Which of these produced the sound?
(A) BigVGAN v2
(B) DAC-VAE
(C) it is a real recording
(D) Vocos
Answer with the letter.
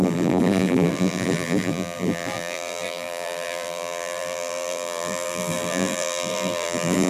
A